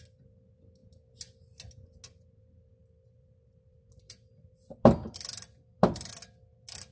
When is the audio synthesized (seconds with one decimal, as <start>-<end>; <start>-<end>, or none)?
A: 2.8-6.1